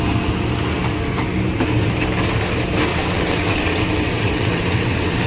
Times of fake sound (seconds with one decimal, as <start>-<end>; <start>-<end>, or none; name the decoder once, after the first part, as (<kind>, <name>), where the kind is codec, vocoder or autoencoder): 2.9-5.3 (vocoder, WaveNeXt)